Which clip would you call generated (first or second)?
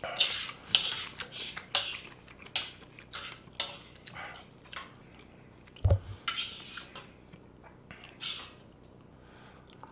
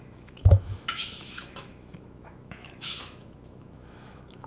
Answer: second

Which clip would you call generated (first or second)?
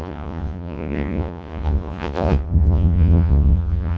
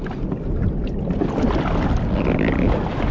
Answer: first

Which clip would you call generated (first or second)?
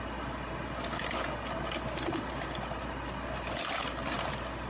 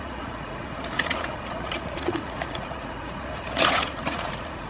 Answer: second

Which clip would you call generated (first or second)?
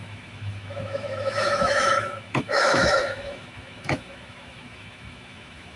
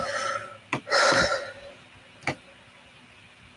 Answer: first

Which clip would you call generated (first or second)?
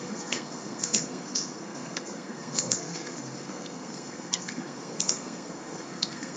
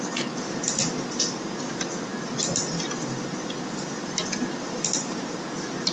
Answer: first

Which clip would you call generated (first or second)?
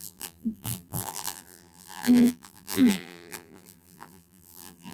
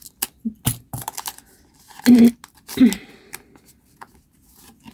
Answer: first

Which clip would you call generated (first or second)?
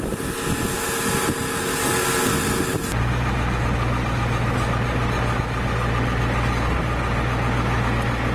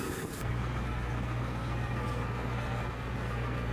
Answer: second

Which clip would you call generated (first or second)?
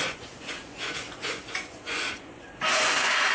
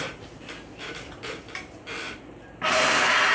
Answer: first